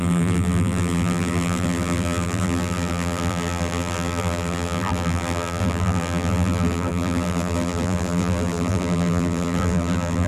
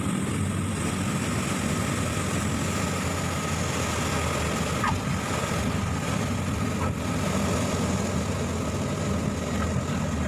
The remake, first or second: first